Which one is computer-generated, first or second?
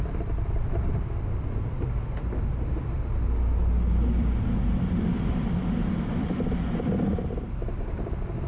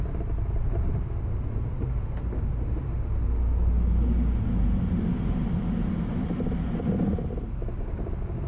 first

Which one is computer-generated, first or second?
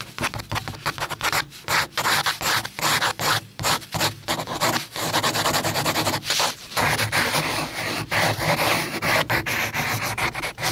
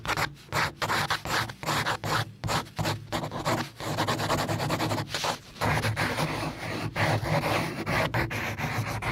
first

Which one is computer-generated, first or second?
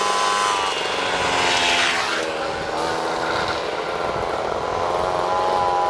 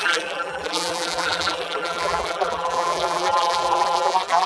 second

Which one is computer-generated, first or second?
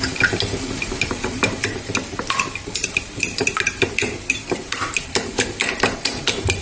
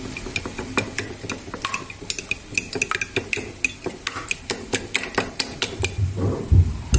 first